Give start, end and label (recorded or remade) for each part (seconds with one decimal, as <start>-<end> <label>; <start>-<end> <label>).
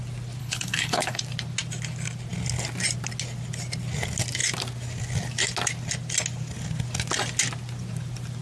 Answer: 0.0-0.4 recorded; 0.4-1.2 remade; 1.2-8.4 recorded